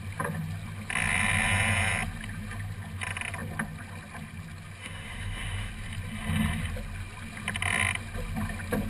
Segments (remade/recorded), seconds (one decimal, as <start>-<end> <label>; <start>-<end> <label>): 0.0-4.8 recorded; 4.8-5.7 remade; 5.7-8.9 recorded